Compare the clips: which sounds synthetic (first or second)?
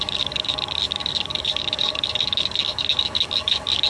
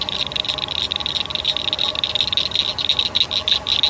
first